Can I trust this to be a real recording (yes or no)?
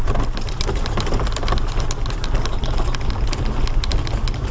yes